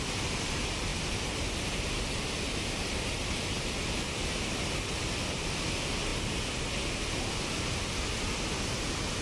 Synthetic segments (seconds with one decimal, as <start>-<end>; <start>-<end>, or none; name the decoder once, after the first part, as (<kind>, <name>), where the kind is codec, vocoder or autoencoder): none